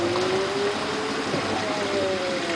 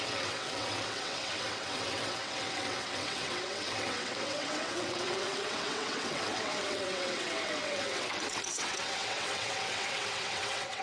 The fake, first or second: second